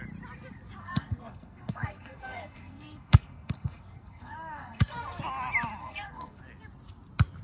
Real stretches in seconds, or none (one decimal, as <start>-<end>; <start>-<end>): 0.0-0.8; 5.2-5.8; 6.4-7.4